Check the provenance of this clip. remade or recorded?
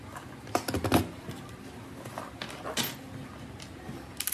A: recorded